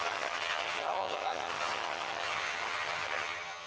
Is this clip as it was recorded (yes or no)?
no